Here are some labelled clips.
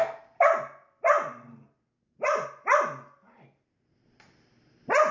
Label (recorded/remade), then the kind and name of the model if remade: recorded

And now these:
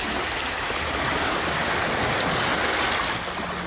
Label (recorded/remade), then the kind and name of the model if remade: recorded